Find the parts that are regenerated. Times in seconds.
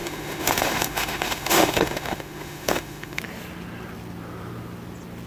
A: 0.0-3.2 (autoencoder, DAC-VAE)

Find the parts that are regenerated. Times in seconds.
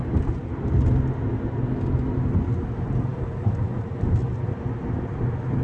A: none